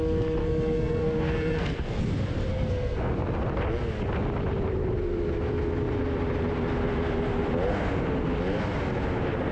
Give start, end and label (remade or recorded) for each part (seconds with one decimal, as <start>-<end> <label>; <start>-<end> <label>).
0.0-0.4 recorded; 0.4-2.0 remade; 2.0-2.5 recorded; 2.5-3.1 remade; 3.1-9.5 recorded